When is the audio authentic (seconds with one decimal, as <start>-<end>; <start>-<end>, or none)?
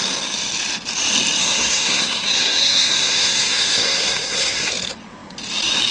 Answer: 0.0-1.4; 4.7-5.9